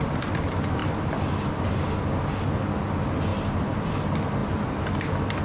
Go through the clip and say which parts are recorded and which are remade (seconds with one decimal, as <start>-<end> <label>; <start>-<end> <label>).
0.0-5.4 recorded